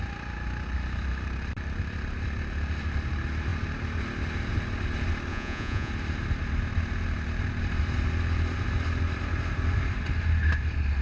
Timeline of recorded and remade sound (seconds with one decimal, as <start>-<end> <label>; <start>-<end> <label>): 0.0-5.3 recorded; 5.3-5.9 remade; 5.9-11.0 recorded